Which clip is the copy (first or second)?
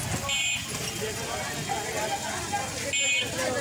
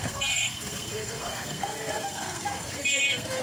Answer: second